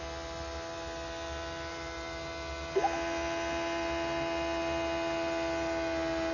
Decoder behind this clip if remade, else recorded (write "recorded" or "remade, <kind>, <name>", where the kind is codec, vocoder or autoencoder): recorded